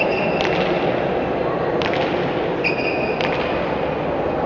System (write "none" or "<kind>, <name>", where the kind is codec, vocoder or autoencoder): none